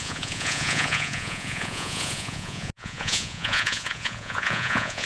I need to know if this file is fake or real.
fake